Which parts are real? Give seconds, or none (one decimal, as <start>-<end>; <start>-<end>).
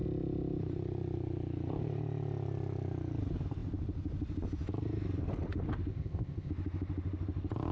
0.0-5.9; 6.5-7.7